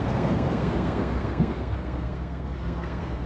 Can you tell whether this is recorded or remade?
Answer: remade